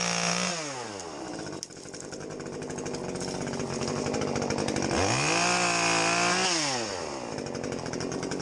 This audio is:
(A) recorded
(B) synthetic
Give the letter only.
A